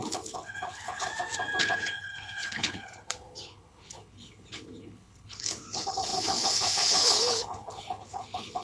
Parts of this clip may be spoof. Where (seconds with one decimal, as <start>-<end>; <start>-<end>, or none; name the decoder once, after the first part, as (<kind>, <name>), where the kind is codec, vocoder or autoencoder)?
0.0-1.1 (codec, HILCodec); 1.6-8.6